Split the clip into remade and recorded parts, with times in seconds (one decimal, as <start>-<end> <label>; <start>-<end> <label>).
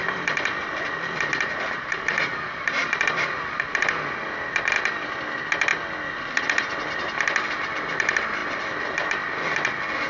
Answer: 0.0-2.2 remade; 2.2-8.4 recorded; 8.4-9.7 remade; 9.7-10.1 recorded